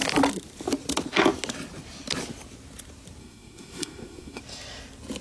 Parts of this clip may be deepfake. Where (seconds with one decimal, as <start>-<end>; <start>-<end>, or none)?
3.2-4.4